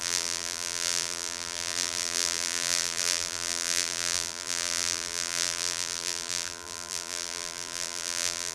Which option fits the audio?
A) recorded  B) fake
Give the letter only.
B